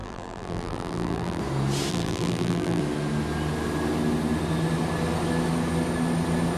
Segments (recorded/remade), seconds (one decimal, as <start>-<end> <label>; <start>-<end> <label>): 0.0-1.4 remade; 1.4-1.9 recorded; 1.9-2.8 remade; 2.8-6.6 recorded